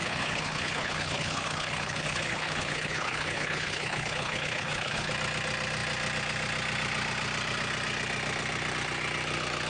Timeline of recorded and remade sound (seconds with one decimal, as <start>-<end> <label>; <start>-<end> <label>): 0.0-5.1 remade; 5.1-9.7 recorded